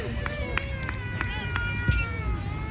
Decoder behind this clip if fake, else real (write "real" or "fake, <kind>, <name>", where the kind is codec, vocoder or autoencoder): real